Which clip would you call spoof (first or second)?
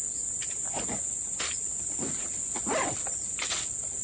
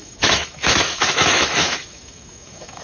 second